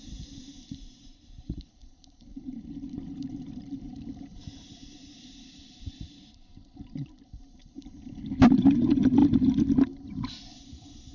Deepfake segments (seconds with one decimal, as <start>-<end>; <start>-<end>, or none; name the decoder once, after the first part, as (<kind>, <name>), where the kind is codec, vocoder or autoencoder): 0.0-6.5 (vocoder, BigVGAN v2); 7.6-9.2; 10.6-11.1